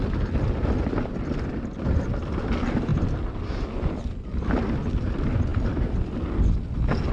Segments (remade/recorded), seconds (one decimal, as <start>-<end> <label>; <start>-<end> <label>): 0.0-7.1 recorded